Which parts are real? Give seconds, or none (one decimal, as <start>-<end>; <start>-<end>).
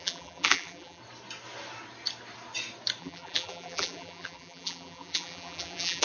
1.0-3.0